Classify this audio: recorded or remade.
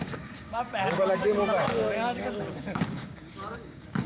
remade